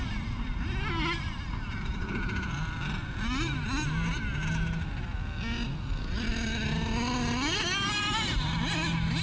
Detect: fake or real real